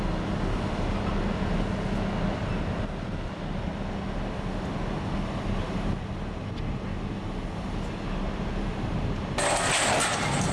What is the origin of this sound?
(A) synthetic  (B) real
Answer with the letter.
B